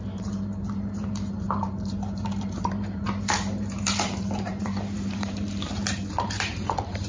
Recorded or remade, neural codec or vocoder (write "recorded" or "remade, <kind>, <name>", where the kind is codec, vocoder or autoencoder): remade, vocoder, BigVGAN v2